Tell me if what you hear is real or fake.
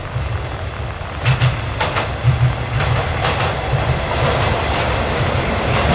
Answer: real